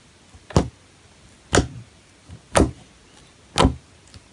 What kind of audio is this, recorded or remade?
recorded